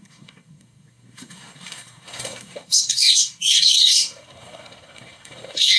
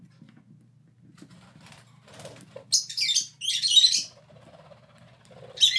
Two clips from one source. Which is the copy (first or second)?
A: first